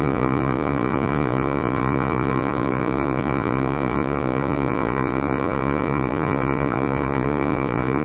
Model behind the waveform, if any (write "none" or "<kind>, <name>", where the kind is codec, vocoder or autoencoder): vocoder, Vocos